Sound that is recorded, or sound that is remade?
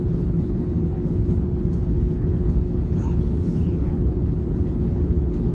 remade